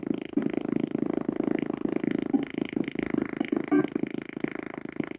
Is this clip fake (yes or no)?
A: no